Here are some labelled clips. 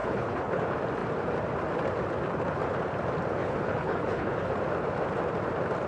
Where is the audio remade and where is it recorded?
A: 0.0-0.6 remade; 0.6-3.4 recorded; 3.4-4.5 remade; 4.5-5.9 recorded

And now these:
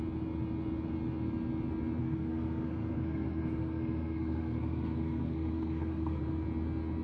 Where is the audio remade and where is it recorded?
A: 0.0-2.0 recorded; 2.0-6.2 remade; 6.2-7.0 recorded

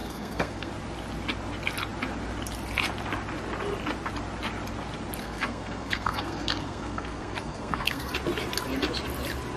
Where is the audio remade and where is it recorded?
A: 0.0-0.7 remade; 0.7-5.2 recorded; 5.2-8.1 remade; 8.1-9.6 recorded

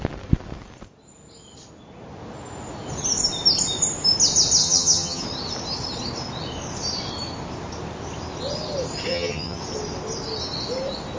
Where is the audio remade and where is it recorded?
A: 0.0-4.6 recorded; 4.6-5.2 remade; 5.2-9.1 recorded; 9.1-9.6 remade; 9.6-11.2 recorded

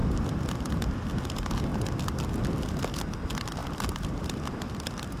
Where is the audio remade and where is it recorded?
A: 0.0-3.6 recorded; 3.6-5.2 remade